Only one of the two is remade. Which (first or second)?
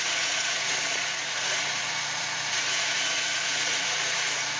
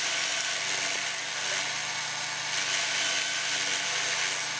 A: first